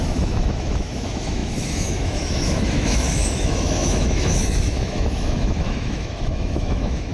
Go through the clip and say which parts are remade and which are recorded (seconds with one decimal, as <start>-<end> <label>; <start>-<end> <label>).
0.0-7.1 remade

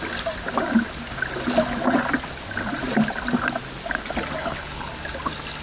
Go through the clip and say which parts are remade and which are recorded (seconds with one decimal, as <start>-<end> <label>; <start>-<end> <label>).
0.0-4.4 recorded; 4.4-4.9 remade; 4.9-5.6 recorded

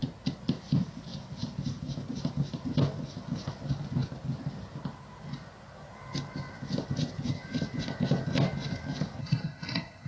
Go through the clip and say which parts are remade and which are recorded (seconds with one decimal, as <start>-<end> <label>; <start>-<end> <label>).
0.0-9.2 recorded; 9.2-10.1 remade

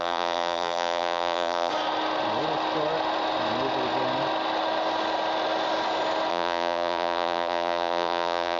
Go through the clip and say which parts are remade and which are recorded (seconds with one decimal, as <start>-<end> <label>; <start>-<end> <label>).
0.0-1.7 remade; 1.7-6.3 recorded; 6.3-8.6 remade

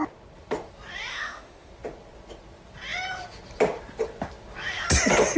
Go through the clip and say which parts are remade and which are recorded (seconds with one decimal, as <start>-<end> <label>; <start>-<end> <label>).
0.0-1.1 recorded; 1.1-1.7 remade; 1.7-5.4 recorded

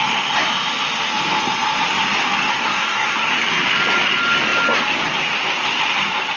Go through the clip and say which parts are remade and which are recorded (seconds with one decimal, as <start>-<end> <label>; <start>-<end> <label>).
0.0-2.5 recorded; 2.5-3.3 remade; 3.3-6.4 recorded

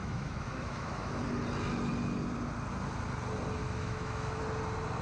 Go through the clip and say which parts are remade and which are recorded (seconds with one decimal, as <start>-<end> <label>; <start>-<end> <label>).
0.0-1.2 remade; 1.2-3.6 recorded; 3.6-4.4 remade; 4.4-5.0 recorded

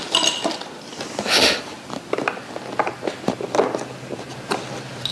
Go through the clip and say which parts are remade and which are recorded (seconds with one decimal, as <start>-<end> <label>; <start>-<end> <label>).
0.0-5.1 recorded